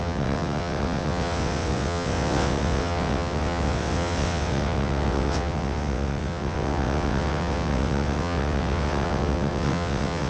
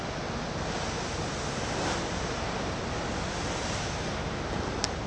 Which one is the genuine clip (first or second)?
second